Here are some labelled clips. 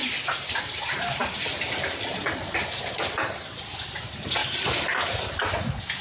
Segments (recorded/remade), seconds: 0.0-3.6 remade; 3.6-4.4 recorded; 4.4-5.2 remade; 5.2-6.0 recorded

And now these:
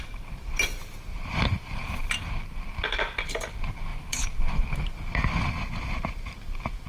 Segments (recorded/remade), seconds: 0.0-1.1 recorded; 1.1-2.3 remade; 2.3-3.9 recorded; 3.9-4.9 remade; 4.9-6.9 recorded

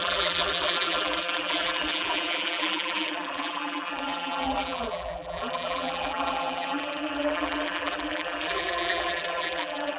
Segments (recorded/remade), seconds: 0.0-10.0 remade

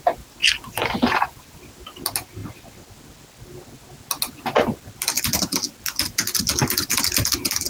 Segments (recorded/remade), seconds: 0.0-7.7 recorded